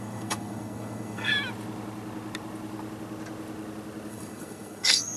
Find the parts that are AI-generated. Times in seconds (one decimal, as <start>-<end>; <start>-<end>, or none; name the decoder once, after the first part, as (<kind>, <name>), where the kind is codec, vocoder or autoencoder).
0.0-1.3 (codec, SNAC); 4.1-5.2